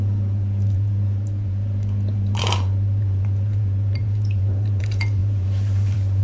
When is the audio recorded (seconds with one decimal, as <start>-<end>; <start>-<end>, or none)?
none